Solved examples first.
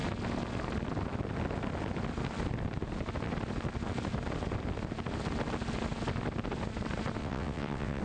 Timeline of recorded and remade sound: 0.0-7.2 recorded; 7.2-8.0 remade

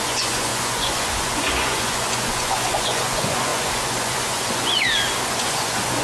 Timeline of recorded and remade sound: 0.0-6.0 remade

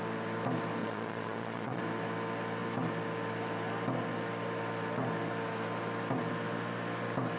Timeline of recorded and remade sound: 0.0-0.8 recorded; 0.8-1.8 remade; 1.8-7.4 recorded

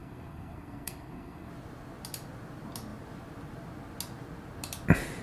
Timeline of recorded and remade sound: 0.0-1.5 remade; 1.5-5.2 recorded

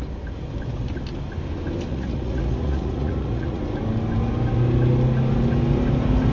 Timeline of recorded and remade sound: 0.0-1.9 recorded; 1.9-3.6 remade; 3.6-6.3 recorded

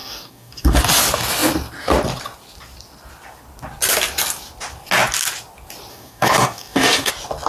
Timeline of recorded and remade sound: 0.0-0.8 remade; 0.8-5.9 recorded; 5.9-7.1 remade; 7.1-7.5 recorded